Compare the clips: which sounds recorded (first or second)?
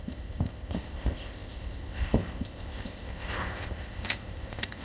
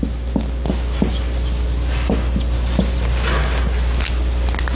second